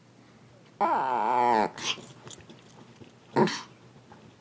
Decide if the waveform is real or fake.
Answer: real